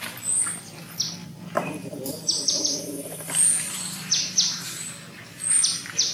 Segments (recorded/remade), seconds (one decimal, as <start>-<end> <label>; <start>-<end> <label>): 0.0-1.2 recorded; 1.2-4.9 remade; 4.9-6.1 recorded